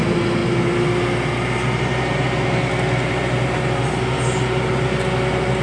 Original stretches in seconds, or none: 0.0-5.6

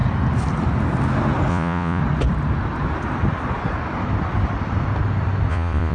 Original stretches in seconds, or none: 0.0-1.5; 2.0-5.5

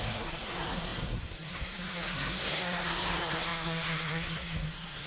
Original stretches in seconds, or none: none

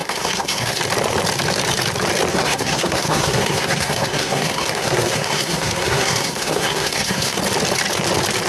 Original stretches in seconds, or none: 0.8-2.3; 7.4-8.5